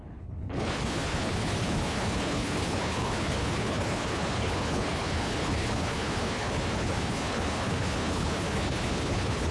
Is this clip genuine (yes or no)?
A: no